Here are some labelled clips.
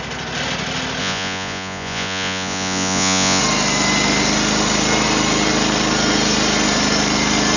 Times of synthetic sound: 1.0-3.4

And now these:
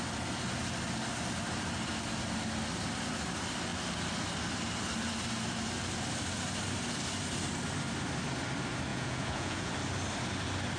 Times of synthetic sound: 8.9-9.7